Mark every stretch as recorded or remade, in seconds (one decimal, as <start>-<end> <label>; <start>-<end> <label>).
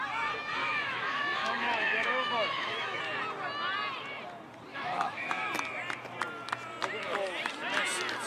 0.0-0.6 recorded; 0.6-3.0 remade; 3.0-4.7 recorded; 4.7-5.5 remade; 5.5-8.3 recorded